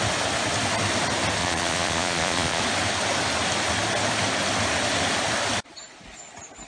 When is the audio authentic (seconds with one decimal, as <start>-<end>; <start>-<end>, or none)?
0.0-1.4; 2.6-6.7